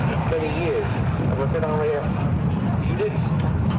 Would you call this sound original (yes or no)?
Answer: yes